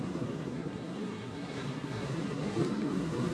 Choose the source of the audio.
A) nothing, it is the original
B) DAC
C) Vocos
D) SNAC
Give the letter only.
D